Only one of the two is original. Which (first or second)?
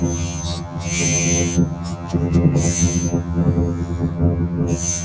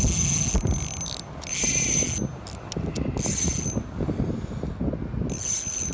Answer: second